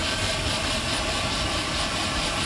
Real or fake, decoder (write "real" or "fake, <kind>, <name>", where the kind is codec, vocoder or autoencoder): fake, vocoder, BigVGAN v2